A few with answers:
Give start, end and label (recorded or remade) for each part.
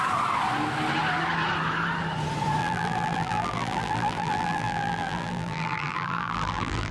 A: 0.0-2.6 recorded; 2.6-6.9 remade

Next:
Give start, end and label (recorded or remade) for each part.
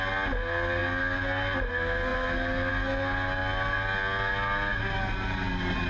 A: 0.0-5.9 recorded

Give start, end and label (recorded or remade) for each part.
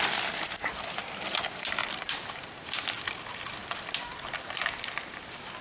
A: 0.0-1.8 recorded; 1.8-3.0 remade; 3.0-5.6 recorded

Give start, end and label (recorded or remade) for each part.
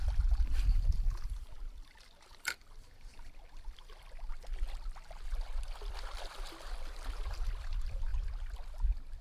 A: 0.0-4.3 remade; 4.3-7.3 recorded; 7.3-8.1 remade; 8.1-9.2 recorded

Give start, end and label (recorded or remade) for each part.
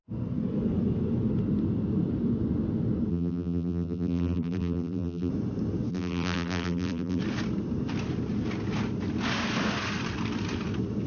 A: 0.0-3.1 recorded; 3.1-5.3 remade; 5.3-5.9 recorded; 5.9-7.2 remade; 7.2-11.1 recorded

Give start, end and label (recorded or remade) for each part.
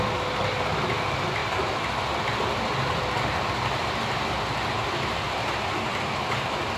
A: 0.0-1.4 recorded; 1.4-2.2 remade; 2.2-5.9 recorded; 5.9-6.8 remade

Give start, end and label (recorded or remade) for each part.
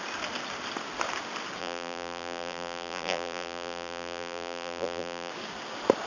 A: 0.0-1.6 recorded; 1.6-5.3 remade; 5.3-6.1 recorded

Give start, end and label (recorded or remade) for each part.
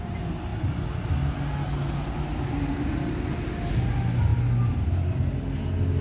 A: 0.0-6.0 recorded